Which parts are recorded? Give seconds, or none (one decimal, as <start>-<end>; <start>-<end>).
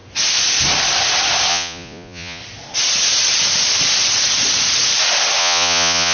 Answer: 0.0-1.5; 2.4-5.4